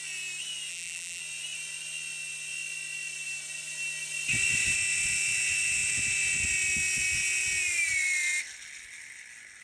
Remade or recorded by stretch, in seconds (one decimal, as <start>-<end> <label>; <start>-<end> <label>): 0.0-0.7 recorded; 0.7-1.2 remade; 1.2-9.6 recorded